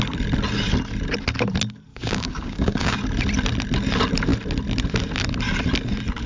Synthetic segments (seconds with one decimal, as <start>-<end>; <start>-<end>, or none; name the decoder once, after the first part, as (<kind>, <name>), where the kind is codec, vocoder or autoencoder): 1.9-3.0 (codec, DAC)